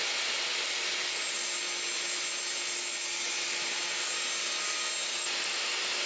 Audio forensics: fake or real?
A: real